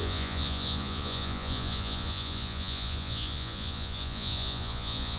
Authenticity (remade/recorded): remade